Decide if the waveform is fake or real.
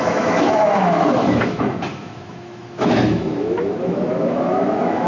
fake